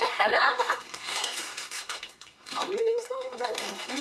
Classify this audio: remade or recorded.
remade